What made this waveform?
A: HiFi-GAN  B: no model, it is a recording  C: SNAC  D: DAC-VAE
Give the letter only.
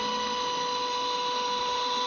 B